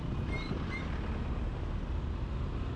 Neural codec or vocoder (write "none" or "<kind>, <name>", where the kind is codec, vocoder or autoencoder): none